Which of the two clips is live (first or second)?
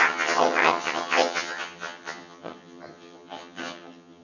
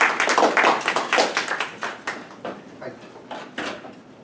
second